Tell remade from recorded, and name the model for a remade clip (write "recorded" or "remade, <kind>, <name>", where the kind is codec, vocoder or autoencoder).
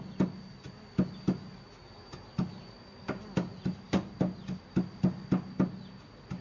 recorded